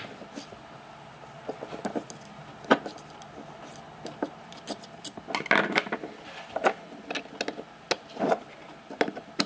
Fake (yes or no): no